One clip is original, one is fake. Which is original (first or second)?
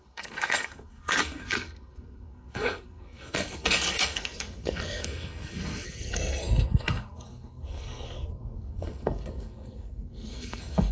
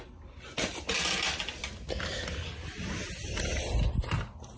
second